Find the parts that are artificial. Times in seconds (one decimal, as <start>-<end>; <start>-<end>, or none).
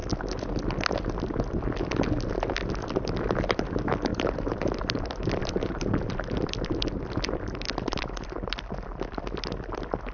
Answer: 4.1-9.2